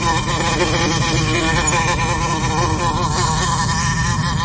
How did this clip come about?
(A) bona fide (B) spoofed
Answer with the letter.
A